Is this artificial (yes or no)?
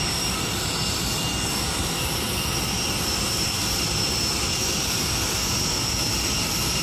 no